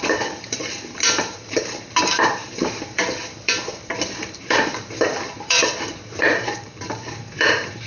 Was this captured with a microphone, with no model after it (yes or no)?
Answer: no